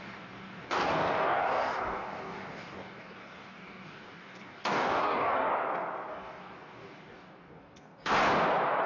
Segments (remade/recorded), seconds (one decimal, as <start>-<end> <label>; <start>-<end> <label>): 0.0-5.5 remade; 5.5-6.1 recorded; 6.1-8.1 remade; 8.1-8.9 recorded